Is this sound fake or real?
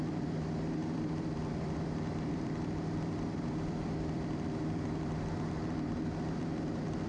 fake